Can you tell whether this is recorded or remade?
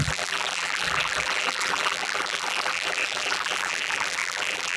remade